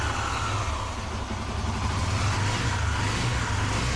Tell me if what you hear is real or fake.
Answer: real